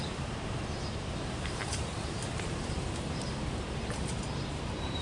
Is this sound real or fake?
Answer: fake